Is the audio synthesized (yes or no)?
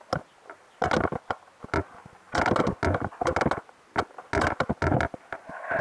no